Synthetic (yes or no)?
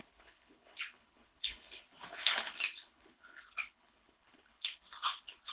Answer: yes